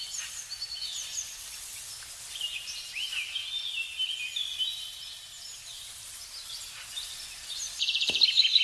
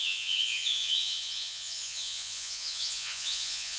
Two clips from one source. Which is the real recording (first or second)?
first